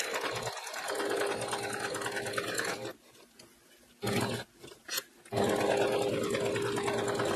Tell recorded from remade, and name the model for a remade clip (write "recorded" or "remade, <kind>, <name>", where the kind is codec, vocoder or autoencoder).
recorded